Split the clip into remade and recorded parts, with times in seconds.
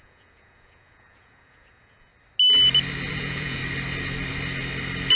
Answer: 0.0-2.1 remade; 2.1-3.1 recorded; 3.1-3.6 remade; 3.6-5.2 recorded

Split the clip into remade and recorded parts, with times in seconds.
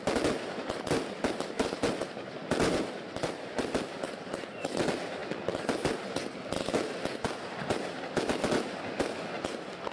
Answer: 0.0-9.9 recorded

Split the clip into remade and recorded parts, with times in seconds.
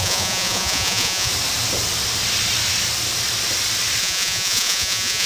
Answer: 0.0-1.3 remade; 1.3-4.0 recorded; 4.0-5.3 remade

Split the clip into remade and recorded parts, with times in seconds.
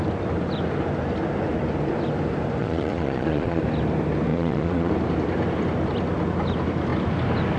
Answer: 0.0-2.6 recorded; 2.6-3.6 remade; 3.6-4.3 recorded; 4.3-4.9 remade; 4.9-7.6 recorded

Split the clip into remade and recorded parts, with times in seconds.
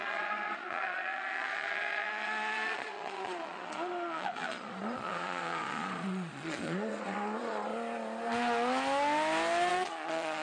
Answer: 0.0-7.7 remade; 7.7-9.7 recorded; 9.7-10.4 remade